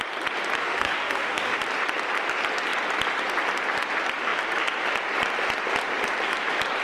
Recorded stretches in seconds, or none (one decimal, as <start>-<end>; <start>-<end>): 0.0-0.6; 1.6-6.8